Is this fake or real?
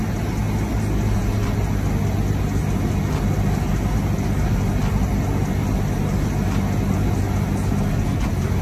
real